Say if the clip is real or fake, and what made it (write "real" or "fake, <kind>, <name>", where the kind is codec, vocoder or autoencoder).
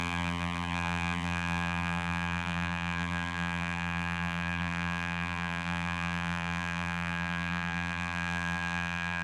fake, vocoder, BigVGAN v2